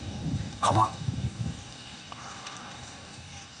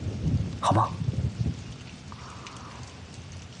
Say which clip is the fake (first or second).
first